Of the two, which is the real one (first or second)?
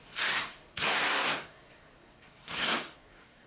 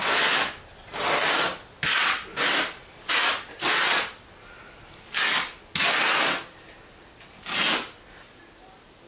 second